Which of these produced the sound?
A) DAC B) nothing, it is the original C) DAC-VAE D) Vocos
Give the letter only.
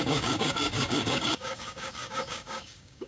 A